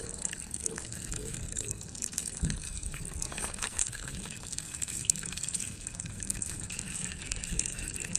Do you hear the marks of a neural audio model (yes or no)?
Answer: yes